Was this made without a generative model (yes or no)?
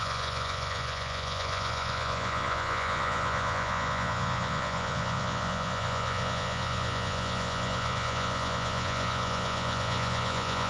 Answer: no